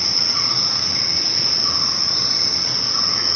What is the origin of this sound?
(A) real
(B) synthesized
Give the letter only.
B